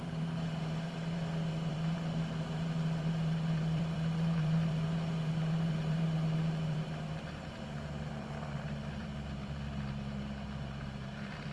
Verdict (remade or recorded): remade